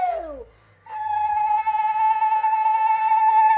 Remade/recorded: recorded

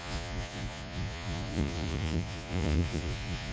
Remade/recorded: remade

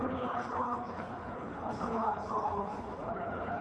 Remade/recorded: remade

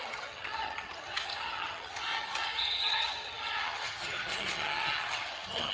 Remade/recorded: remade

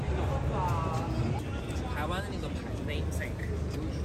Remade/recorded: recorded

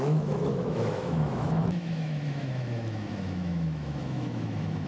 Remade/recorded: remade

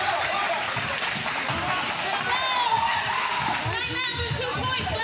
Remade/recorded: recorded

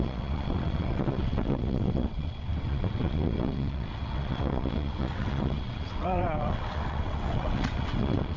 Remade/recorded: remade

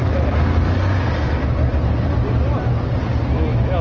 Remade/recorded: recorded